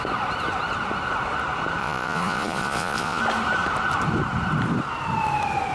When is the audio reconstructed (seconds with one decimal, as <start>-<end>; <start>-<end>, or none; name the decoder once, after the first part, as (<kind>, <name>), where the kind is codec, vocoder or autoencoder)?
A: 1.8-3.2 (vocoder, Vocos)